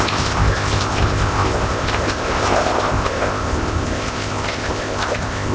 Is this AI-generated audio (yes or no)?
yes